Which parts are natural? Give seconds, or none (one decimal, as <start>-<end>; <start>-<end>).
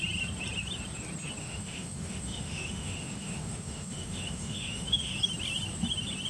0.0-1.4; 5.2-6.3